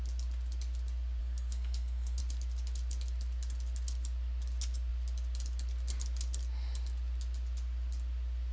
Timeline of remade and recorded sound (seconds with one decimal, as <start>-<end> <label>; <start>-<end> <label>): 0.0-1.2 recorded; 1.2-2.2 remade; 2.2-8.5 recorded